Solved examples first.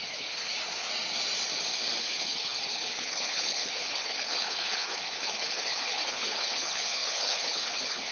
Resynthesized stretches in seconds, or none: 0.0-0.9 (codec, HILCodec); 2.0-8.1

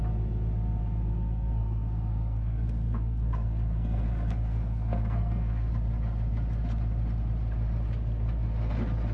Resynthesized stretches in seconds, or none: 0.8-5.7 (codec, SNAC)